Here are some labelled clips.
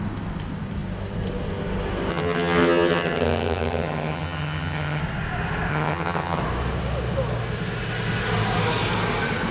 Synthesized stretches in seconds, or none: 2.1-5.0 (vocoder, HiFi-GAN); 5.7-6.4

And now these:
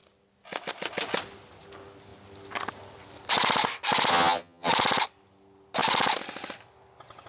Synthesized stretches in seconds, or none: 4.1-4.7 (vocoder, HiFi-GAN)

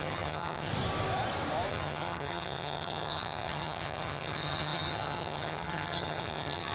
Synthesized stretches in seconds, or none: 0.0-0.7 (vocoder, HiFi-GAN); 1.7-6.7

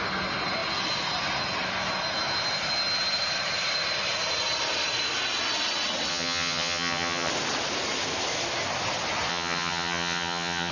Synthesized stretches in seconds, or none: 6.1-7.3 (vocoder, HiFi-GAN); 9.3-10.7

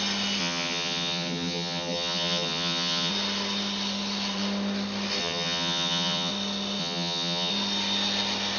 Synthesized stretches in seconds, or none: 0.4-3.1 (vocoder, HiFi-GAN); 5.2-6.3; 6.8-7.5

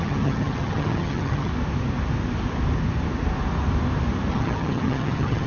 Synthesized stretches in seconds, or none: 0.0-1.5 (vocoder, HiFi-GAN); 4.3-5.5

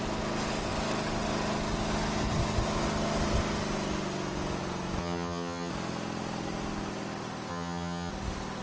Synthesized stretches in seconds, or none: 5.0-5.7 (vocoder, HiFi-GAN); 7.5-8.1

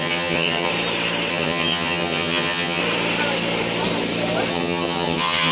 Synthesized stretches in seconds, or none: 0.0-0.7 (vocoder, HiFi-GAN); 1.3-2.8; 4.5-5.5